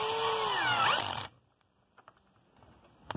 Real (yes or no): yes